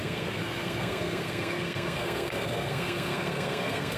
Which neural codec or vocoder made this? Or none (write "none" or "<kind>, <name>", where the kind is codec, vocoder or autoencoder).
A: codec, SNAC